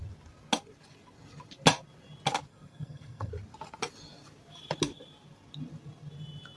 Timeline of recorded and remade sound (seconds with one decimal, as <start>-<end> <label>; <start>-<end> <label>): 0.0-2.5 recorded; 2.5-3.3 remade; 3.3-6.6 recorded